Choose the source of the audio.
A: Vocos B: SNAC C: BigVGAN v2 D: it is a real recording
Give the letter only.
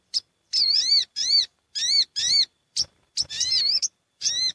C